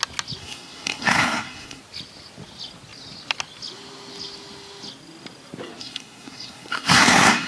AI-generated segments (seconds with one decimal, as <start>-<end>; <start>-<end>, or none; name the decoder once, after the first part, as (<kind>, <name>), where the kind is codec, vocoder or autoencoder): 0.4-1.8 (codec, SNAC); 5.8-7.5